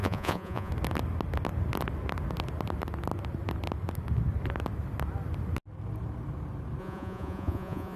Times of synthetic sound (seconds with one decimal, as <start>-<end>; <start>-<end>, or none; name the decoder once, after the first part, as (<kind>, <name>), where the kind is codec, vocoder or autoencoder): 0.0-0.7 (vocoder, Vocos); 6.8-8.0